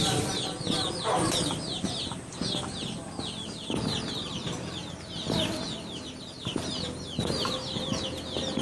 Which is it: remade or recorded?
recorded